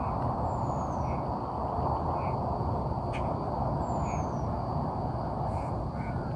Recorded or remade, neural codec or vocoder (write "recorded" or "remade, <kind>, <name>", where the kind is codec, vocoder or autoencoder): recorded